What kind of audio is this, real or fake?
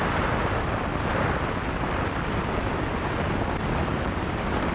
real